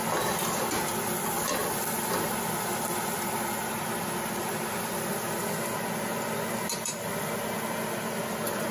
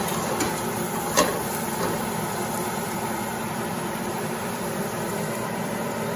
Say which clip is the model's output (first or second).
second